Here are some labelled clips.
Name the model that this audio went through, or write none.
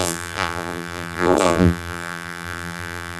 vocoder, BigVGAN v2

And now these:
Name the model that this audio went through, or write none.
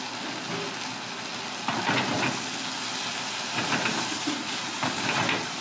none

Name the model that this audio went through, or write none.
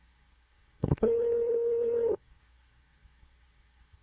codec, SNAC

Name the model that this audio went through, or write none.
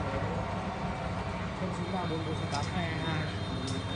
none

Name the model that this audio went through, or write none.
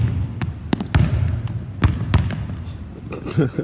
none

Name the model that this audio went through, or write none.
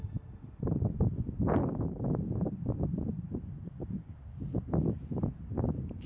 none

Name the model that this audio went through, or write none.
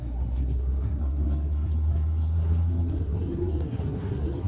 codec, SNAC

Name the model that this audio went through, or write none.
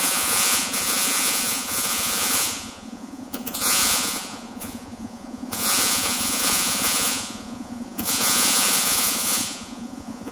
vocoder, Vocos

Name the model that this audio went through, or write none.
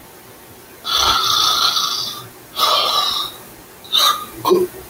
none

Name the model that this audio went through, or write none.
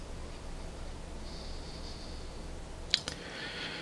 none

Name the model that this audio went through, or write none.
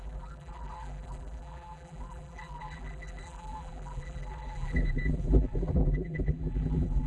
vocoder, BigVGAN v2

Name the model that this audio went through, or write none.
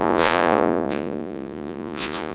vocoder, Vocos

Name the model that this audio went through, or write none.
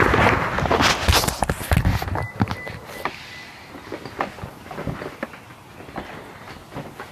none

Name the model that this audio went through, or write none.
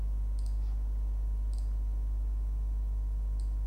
none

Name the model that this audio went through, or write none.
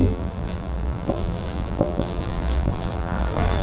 vocoder, BigVGAN v2